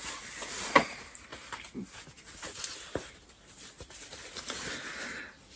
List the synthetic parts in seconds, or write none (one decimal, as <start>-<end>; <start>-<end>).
none

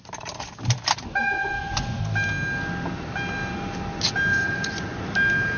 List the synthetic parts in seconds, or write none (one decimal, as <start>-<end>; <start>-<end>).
1.2-2.0; 4.3-5.0